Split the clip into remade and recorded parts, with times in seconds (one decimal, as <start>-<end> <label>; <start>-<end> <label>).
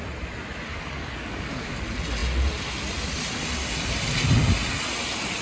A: 0.0-0.7 recorded; 0.7-1.8 remade; 1.8-5.4 recorded